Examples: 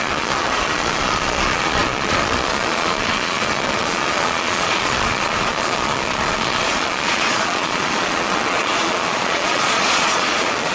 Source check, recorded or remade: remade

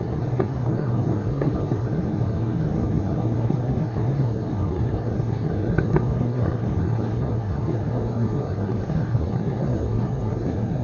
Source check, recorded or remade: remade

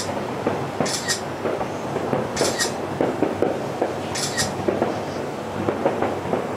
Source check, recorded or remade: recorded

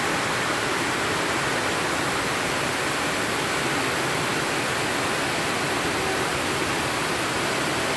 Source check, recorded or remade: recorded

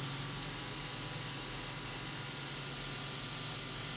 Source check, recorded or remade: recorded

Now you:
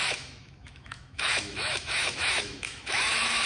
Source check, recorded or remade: remade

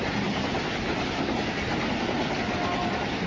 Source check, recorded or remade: recorded